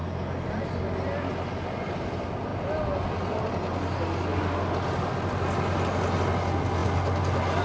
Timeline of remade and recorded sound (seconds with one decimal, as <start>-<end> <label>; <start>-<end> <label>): 0.0-7.6 recorded